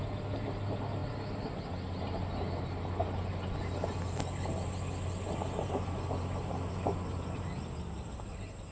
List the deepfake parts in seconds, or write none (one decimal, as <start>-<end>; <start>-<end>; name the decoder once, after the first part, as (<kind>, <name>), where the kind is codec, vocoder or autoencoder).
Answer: none